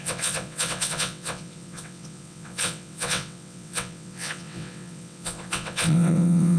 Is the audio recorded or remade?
remade